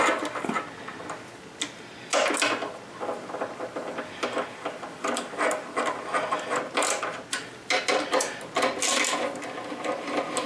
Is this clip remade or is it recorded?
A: recorded